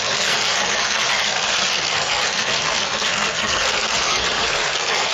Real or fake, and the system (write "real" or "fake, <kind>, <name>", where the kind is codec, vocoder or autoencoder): fake, codec, SNAC